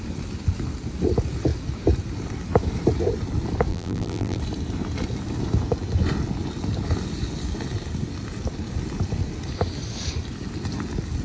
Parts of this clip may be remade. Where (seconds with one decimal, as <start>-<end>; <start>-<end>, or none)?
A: 3.7-4.4